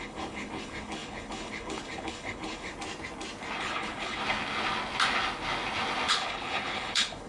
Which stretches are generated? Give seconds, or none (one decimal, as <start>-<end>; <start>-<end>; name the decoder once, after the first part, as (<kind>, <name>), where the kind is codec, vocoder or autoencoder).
0.0-2.7 (codec, HILCodec); 3.6-4.2; 6.1-7.3